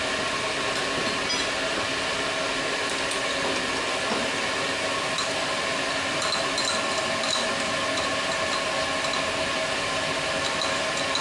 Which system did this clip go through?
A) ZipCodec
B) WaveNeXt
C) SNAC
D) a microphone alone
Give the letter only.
D